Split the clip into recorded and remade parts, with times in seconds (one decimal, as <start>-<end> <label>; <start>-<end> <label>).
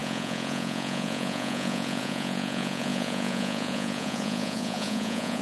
0.0-5.4 remade